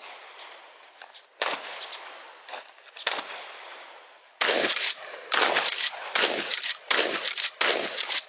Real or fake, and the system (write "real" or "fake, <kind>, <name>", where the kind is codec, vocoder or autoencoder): real